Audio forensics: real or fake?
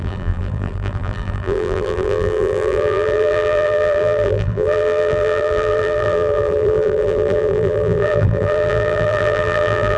fake